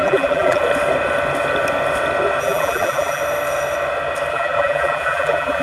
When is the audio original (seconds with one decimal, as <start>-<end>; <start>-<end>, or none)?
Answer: 0.6-2.4; 3.2-4.3